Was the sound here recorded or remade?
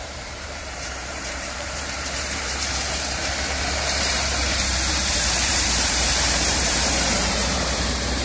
remade